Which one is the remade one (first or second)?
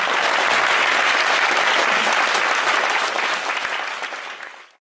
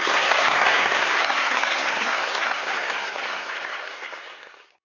second